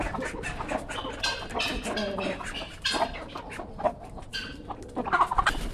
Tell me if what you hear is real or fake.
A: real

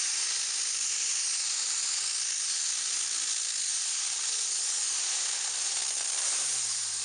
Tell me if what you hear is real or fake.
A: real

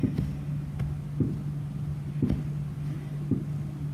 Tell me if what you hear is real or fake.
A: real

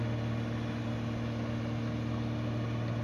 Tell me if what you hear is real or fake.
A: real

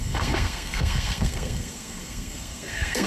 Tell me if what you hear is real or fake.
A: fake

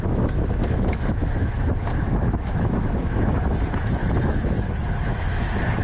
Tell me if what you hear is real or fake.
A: fake